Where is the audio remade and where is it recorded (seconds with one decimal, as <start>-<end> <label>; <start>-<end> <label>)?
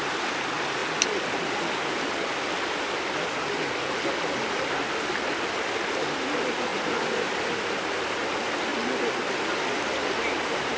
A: 0.0-10.8 recorded